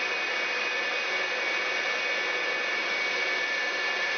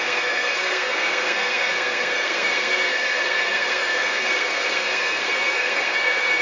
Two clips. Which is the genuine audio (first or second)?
first